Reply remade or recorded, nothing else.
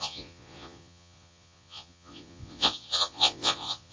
remade